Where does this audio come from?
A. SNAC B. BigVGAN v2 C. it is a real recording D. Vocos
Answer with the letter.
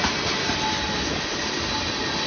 C